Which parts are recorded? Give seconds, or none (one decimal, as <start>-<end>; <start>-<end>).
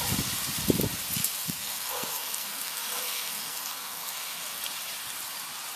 0.0-1.2; 4.6-5.8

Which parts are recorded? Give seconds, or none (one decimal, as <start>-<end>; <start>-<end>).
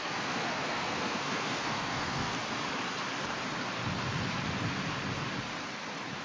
2.3-6.2